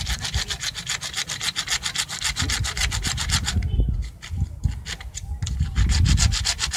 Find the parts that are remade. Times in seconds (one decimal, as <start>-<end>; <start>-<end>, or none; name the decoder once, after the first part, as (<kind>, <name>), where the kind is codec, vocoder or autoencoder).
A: none